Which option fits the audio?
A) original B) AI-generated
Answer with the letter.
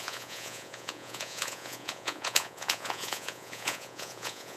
B